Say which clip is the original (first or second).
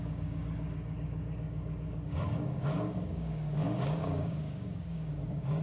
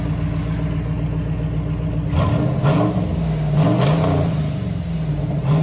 second